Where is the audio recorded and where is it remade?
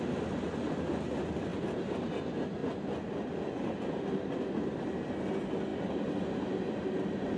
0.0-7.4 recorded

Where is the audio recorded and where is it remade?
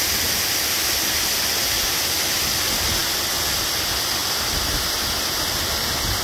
0.0-6.2 recorded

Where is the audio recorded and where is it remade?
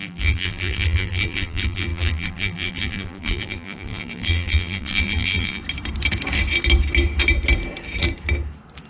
0.0-5.6 remade; 5.6-8.9 recorded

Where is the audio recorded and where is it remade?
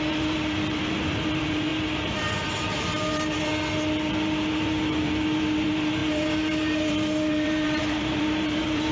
0.0-3.5 remade; 3.5-4.1 recorded; 4.1-8.9 remade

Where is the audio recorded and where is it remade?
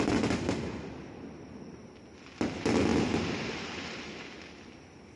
0.0-2.9 recorded; 2.9-3.5 remade; 3.5-5.2 recorded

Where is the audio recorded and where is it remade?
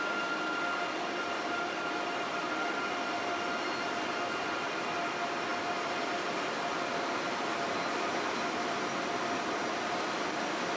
0.0-5.5 recorded; 5.5-6.6 remade; 6.6-10.8 recorded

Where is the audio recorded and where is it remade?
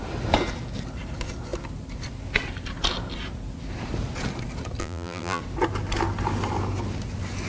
0.0-4.8 recorded; 4.8-5.4 remade; 5.4-7.5 recorded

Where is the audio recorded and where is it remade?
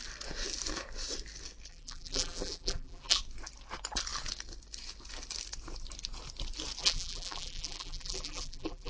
0.0-1.7 recorded; 1.7-3.2 remade; 3.2-6.8 recorded; 6.8-8.9 remade